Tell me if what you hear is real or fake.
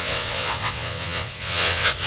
fake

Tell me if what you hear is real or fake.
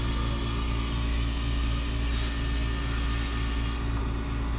real